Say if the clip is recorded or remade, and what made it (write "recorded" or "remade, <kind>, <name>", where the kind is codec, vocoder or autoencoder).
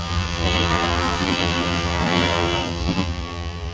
remade, vocoder, BigVGAN v2